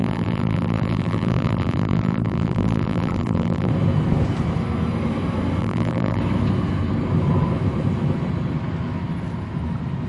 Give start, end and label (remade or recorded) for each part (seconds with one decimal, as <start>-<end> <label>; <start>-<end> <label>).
0.0-3.7 remade; 3.7-5.6 recorded; 5.6-6.2 remade; 6.2-10.1 recorded